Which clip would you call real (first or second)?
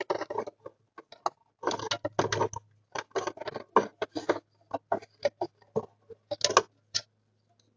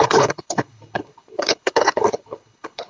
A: first